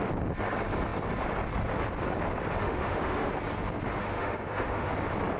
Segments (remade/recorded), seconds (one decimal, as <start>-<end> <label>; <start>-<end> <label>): 0.0-2.6 recorded; 2.6-3.3 remade; 3.3-4.0 recorded; 4.0-4.9 remade; 4.9-5.4 recorded